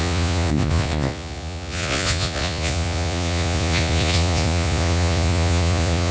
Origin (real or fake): fake